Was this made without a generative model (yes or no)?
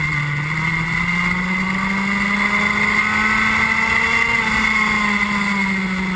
yes